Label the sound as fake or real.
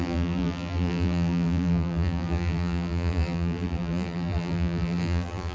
fake